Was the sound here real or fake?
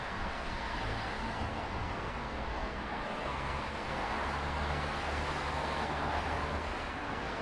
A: fake